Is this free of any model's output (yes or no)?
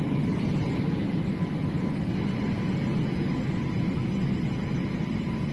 yes